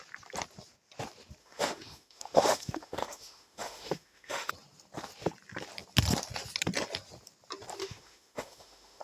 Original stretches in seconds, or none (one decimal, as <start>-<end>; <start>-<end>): 0.0-1.4; 4.5-7.8